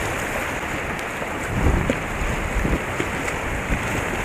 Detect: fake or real real